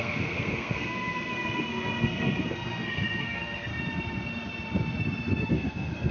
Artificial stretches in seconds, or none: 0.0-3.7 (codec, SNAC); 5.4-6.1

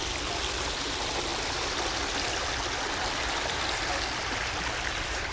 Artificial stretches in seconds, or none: none

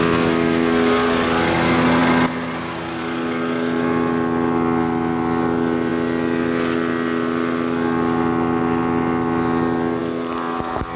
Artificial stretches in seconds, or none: none

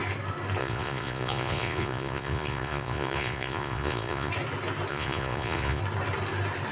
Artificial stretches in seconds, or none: 0.6-4.3 (vocoder, Vocos); 4.9-5.8

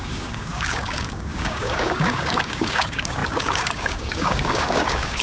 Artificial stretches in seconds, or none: 0.0-5.2 (codec, DAC)

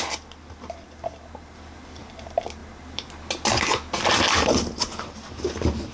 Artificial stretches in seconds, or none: none

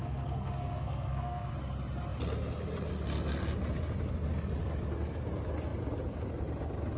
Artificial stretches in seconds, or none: 0.0-1.5 (codec, SNAC)

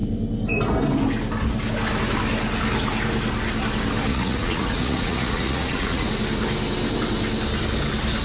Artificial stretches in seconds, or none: 4.1-6.1 (vocoder, Vocos)